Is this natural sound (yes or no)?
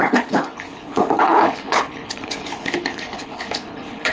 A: no